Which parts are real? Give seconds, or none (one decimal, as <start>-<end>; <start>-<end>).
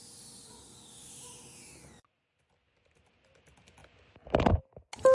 0.0-5.1